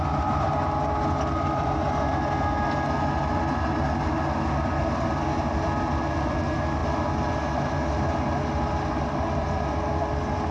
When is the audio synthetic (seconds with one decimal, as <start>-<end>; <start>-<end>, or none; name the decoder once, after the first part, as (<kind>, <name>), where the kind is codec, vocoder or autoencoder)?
none